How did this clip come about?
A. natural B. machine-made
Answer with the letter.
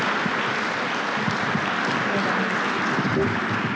A